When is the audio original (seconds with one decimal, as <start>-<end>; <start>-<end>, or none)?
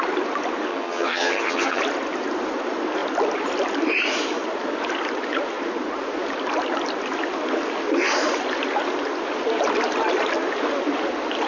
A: 0.0-0.7; 1.8-11.5